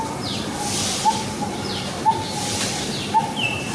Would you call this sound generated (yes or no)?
no